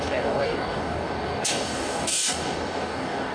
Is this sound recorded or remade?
remade